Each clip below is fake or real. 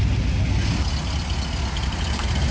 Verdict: real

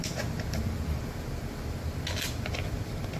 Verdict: real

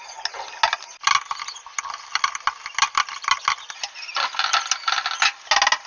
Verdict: real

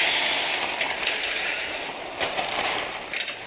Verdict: real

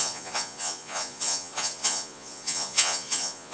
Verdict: fake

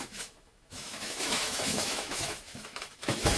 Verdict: fake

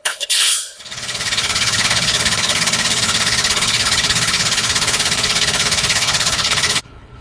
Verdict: fake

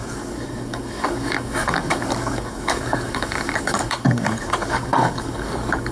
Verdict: fake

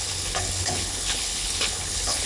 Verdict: fake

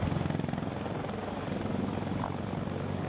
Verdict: real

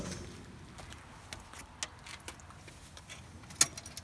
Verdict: real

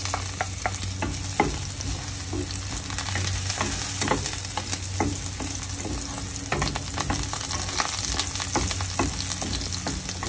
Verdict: real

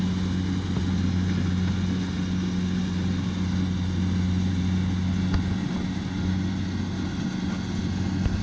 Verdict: real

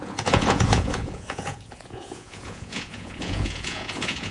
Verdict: fake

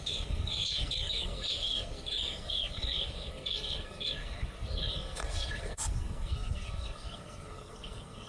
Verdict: fake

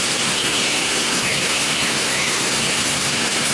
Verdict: fake